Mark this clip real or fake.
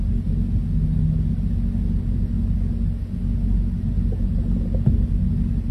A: real